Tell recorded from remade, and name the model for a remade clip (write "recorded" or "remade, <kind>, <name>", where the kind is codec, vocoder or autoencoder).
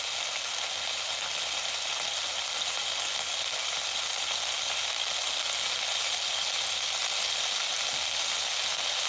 recorded